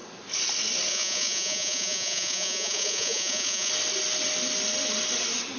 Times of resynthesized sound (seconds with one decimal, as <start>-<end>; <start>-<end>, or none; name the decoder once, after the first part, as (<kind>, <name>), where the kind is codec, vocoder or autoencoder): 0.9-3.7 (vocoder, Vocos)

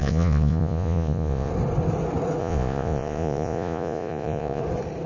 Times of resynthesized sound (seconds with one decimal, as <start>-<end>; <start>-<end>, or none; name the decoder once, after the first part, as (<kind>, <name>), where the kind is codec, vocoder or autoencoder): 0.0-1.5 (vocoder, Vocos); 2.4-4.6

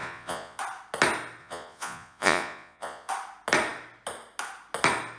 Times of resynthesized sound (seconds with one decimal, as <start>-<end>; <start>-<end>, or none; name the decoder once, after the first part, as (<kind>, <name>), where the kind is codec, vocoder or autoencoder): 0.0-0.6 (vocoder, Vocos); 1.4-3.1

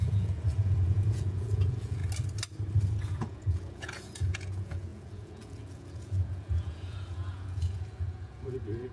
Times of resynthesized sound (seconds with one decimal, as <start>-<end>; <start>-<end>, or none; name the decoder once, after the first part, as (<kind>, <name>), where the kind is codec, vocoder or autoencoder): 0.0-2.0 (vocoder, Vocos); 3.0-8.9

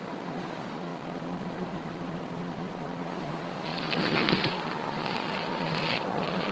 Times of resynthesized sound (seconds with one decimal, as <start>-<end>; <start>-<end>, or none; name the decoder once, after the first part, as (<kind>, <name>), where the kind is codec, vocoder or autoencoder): 0.0-6.5 (vocoder, Vocos)